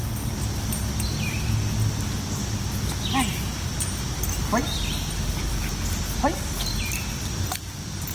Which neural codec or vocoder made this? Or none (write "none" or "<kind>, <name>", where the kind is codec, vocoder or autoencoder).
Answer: none